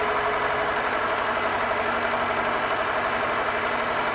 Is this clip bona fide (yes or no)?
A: yes